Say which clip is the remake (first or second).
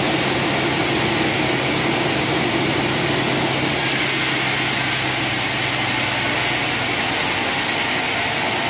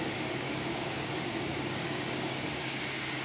second